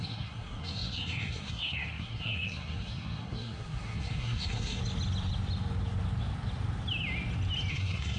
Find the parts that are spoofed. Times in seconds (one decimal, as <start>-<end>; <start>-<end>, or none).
0.0-4.8; 7.7-8.2

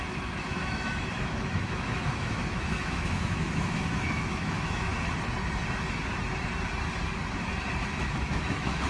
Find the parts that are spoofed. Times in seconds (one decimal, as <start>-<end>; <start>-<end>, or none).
0.0-4.9; 8.0-8.9

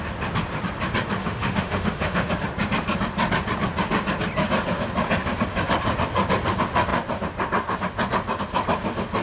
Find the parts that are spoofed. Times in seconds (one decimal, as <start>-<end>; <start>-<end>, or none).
1.2-2.3

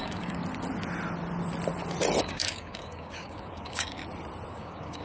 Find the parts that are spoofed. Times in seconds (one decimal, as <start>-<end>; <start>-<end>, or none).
0.0-0.4; 2.2-4.0; 4.5-5.0

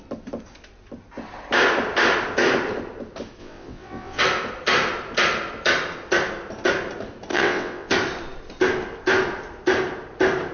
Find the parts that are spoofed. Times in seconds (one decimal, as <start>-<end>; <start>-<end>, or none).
3.4-4.2; 7.3-7.9

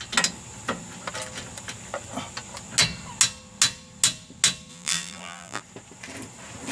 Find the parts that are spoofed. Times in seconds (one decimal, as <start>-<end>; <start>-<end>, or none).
4.7-5.6